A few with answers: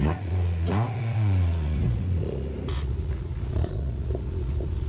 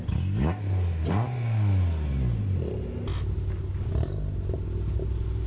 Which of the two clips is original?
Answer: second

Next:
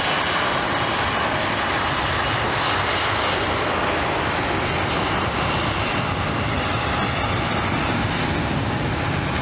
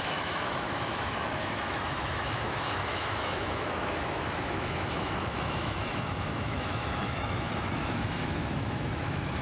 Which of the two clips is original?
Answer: first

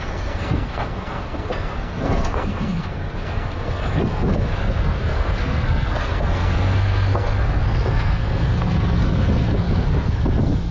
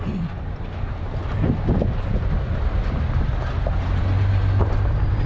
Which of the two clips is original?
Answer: second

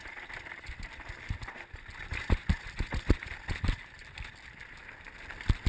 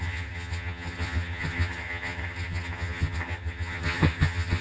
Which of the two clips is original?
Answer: first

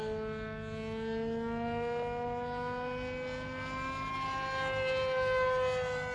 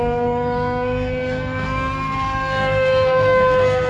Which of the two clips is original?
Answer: first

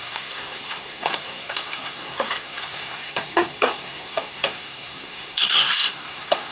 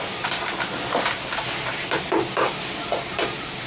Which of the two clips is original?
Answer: second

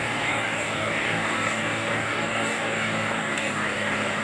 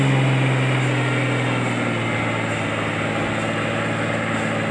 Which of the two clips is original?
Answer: second